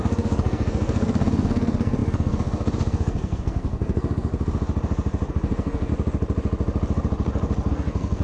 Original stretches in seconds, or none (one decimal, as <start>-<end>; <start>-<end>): 4.3-5.3; 5.9-7.7